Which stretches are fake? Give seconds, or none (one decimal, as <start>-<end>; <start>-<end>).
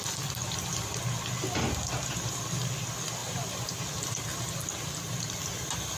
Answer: 3.2-3.8